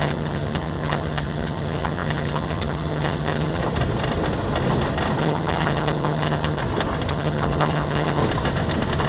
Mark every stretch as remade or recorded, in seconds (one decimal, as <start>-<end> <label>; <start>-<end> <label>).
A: 0.0-3.6 remade; 3.6-5.2 recorded; 5.2-6.6 remade; 6.6-7.1 recorded; 7.1-8.2 remade; 8.2-9.1 recorded